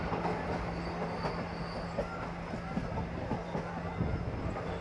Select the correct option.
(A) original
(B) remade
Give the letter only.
A